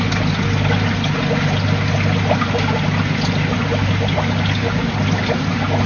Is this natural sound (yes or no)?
yes